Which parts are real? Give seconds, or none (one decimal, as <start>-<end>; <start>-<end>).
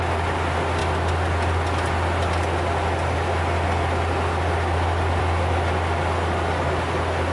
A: 0.0-7.3